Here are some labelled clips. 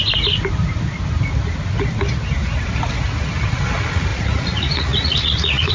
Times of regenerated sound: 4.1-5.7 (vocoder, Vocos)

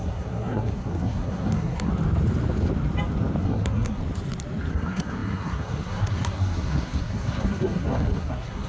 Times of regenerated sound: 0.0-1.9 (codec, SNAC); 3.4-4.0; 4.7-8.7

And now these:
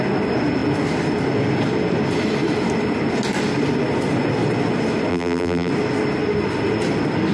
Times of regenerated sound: 5.1-5.7 (vocoder, BigVGAN v2)